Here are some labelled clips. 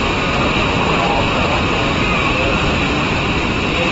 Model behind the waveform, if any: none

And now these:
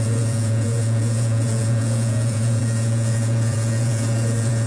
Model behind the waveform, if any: vocoder, Vocos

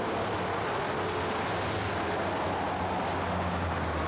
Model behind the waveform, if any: none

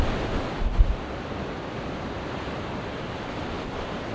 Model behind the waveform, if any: none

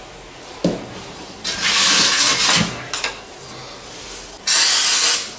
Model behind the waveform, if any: none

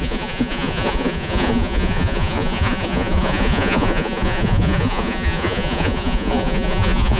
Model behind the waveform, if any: vocoder, Vocos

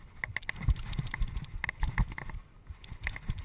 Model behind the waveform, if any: none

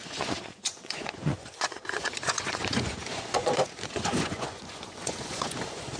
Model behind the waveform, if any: vocoder, Vocos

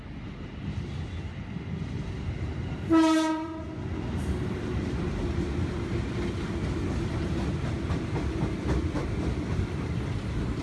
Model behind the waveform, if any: none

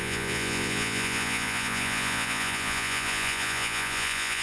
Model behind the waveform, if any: vocoder, Vocos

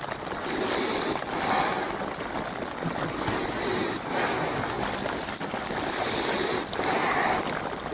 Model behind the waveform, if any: none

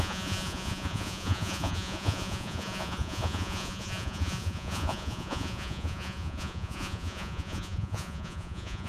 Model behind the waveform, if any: vocoder, Vocos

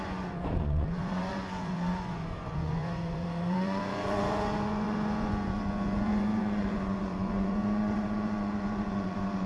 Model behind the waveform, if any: vocoder, Vocos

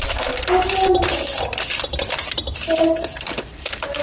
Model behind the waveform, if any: none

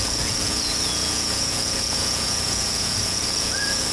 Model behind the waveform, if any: vocoder, Vocos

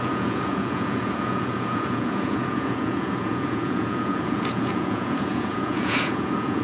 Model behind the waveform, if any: vocoder, Vocos